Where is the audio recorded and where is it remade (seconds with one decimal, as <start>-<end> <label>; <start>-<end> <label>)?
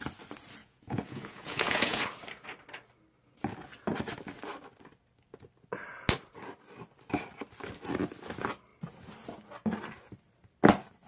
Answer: 0.0-0.6 recorded; 0.6-2.0 remade; 2.0-11.1 recorded